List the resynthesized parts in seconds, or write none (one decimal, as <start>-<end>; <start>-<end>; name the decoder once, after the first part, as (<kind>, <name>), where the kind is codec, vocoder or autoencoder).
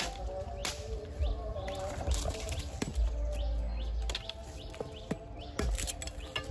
none